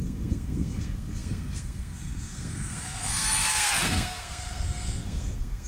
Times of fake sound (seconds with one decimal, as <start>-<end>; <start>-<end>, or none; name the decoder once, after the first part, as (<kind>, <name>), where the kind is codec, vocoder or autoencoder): 0.0-5.7 (codec, SNAC)